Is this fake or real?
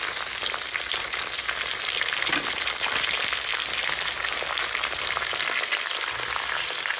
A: real